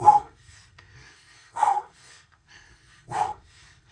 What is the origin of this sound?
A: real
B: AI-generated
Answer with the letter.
B